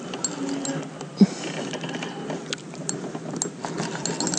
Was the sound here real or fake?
real